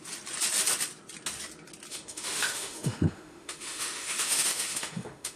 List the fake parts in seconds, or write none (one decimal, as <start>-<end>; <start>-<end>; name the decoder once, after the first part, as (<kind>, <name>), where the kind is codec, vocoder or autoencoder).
1.9-5.4 (autoencoder, DAC-VAE)